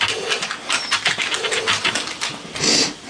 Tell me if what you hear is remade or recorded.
recorded